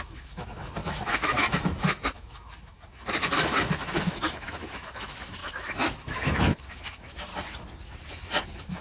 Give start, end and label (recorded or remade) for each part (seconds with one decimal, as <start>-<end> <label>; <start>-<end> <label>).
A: 0.0-7.3 remade; 7.3-8.1 recorded; 8.1-8.8 remade